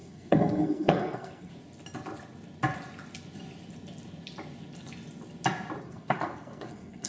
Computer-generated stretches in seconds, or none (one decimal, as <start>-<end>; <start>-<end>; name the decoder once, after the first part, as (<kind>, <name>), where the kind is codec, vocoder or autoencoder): 0.0-1.5 (codec, SNAC); 5.8-7.1